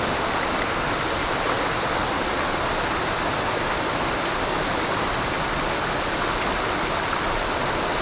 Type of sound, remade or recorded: recorded